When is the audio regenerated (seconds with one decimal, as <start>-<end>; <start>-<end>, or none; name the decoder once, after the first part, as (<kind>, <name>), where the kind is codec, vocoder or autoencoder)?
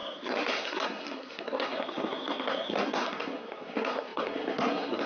0.0-5.1 (codec, SNAC)